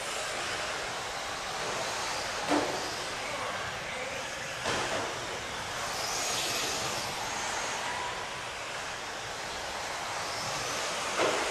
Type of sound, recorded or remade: recorded